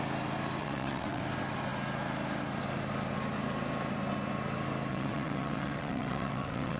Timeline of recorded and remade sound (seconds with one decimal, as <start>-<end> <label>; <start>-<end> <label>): 0.0-0.6 recorded; 0.6-1.2 remade; 1.2-4.9 recorded; 4.9-6.8 remade